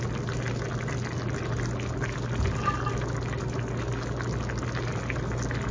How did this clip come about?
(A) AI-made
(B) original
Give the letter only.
B